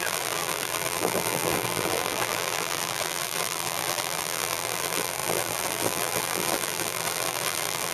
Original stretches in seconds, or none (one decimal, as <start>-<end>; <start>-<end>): none